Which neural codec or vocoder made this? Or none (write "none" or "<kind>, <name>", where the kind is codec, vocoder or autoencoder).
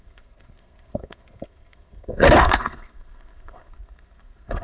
codec, SNAC